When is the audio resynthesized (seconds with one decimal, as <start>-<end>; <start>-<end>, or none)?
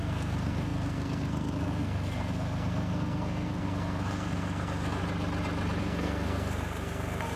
0.0-5.0; 5.8-7.4